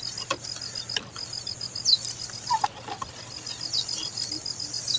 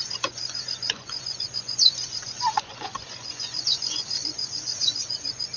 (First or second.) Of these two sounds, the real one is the first